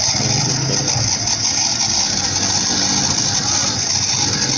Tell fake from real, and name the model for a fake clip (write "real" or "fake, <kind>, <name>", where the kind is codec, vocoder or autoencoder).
real